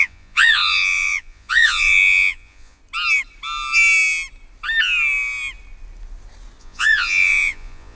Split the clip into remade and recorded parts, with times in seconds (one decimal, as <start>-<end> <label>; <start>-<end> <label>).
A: 0.0-2.8 remade; 2.8-6.6 recorded; 6.6-8.0 remade